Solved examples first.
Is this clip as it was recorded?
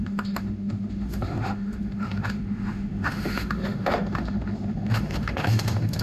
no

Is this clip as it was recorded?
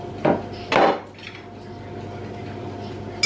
yes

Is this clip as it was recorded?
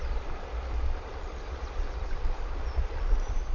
yes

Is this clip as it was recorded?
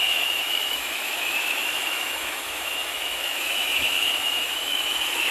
no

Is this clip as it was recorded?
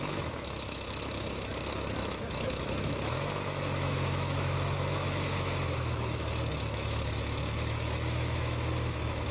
no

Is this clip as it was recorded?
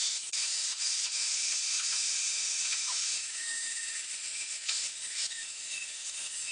no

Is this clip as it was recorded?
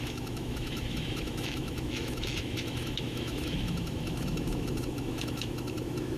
no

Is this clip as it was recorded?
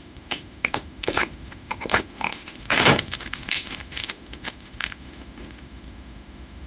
no